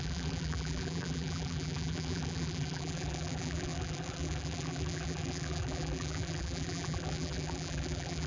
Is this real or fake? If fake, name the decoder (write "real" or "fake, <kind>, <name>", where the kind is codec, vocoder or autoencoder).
fake, vocoder, BigVGAN v2